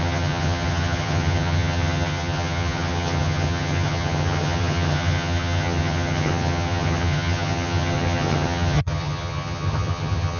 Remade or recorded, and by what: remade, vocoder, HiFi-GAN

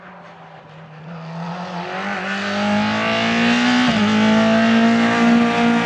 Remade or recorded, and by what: recorded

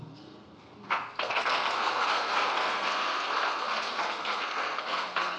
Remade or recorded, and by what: remade, codec, SNAC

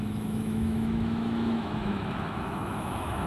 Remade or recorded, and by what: remade, autoencoder, DAC-VAE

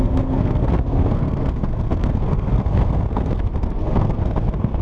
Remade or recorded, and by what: remade, codec, SNAC